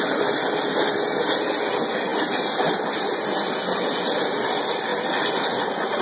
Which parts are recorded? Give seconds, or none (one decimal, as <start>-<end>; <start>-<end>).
0.0-6.0